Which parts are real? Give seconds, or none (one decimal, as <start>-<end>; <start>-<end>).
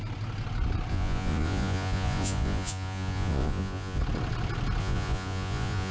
0.0-0.9; 4.0-4.8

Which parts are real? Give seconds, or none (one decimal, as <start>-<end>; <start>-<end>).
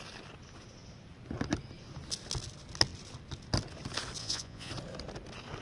0.0-4.2; 4.7-5.6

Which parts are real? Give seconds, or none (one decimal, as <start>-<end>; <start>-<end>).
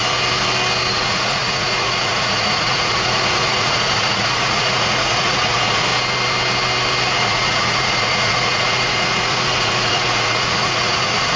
0.0-0.9; 5.9-7.1